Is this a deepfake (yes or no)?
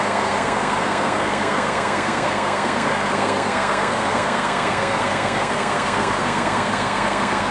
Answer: yes